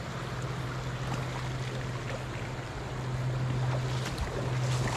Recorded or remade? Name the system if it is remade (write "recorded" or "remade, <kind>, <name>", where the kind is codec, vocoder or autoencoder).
recorded